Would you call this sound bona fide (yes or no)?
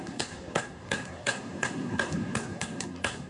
no